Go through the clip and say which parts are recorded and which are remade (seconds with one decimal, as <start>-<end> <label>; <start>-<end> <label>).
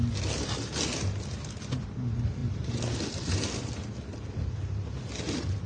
0.0-5.7 recorded